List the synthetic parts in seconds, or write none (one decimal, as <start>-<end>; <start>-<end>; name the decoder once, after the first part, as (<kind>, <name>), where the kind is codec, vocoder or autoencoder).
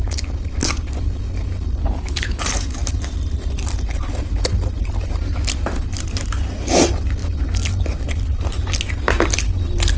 1.8-2.4 (codec, HILCodec)